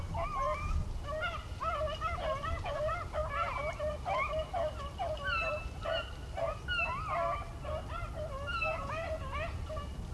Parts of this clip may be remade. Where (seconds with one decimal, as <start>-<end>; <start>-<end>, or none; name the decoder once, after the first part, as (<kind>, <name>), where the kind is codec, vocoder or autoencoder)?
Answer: none